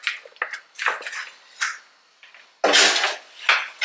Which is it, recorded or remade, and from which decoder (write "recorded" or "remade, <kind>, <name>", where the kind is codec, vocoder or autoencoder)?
recorded